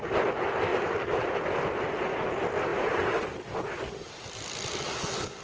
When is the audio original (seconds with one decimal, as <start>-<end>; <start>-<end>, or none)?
0.0-5.4